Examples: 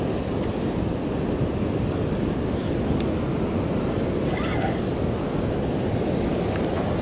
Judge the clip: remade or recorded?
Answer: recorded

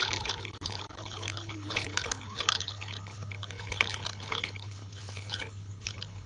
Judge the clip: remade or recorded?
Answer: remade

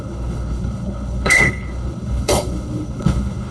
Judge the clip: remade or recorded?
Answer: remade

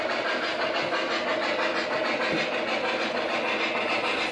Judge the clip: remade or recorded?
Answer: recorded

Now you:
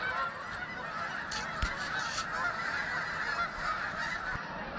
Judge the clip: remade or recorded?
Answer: recorded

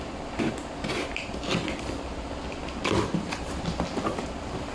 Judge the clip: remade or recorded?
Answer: recorded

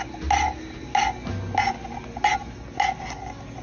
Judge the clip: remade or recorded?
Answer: recorded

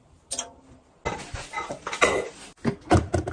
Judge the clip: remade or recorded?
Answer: recorded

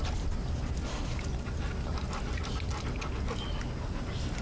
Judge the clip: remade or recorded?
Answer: recorded